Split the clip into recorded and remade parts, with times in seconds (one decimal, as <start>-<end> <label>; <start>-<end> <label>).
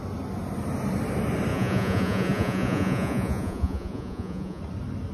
0.0-1.5 recorded; 1.5-4.6 remade; 4.6-5.1 recorded